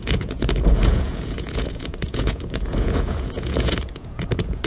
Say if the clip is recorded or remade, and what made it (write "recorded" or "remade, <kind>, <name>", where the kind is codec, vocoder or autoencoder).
remade, vocoder, Vocos